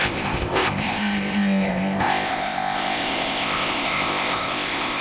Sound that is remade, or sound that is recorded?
remade